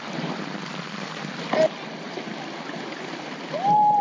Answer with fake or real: real